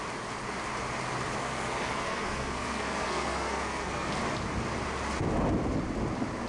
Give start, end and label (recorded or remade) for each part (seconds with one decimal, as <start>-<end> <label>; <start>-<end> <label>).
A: 0.0-1.4 recorded; 1.4-4.1 remade; 4.1-6.5 recorded